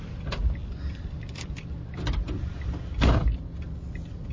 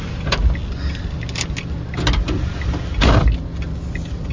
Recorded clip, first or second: second